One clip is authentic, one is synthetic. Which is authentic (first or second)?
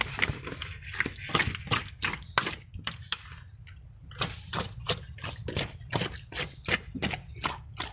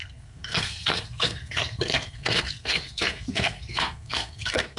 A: first